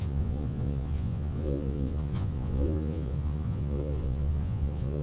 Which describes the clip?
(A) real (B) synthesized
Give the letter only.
B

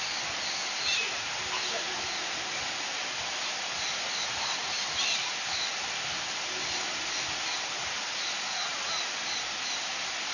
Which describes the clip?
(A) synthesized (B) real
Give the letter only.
B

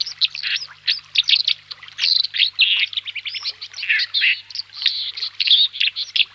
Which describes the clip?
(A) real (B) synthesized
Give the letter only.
A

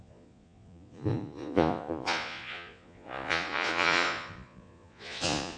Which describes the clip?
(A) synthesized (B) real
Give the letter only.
A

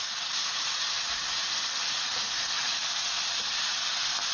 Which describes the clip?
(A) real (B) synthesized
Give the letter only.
A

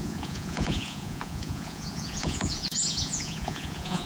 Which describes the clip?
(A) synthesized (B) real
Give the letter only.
A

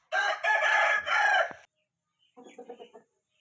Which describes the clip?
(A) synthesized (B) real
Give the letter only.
B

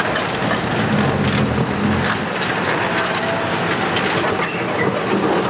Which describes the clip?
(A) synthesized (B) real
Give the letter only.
B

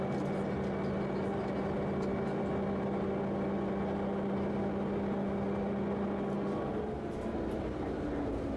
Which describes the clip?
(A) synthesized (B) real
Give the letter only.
B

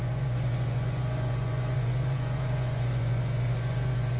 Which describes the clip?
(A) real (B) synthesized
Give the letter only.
B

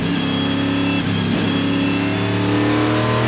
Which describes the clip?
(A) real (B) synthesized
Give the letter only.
A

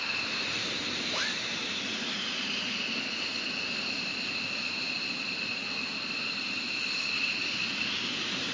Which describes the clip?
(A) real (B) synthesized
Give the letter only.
A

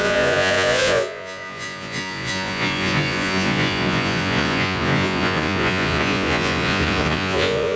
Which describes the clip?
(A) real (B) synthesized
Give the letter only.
B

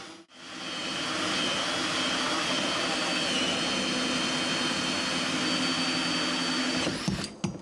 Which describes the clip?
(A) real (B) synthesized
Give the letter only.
A